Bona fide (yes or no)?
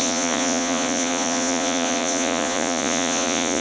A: no